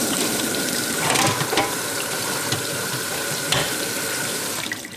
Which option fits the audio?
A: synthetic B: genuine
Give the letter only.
A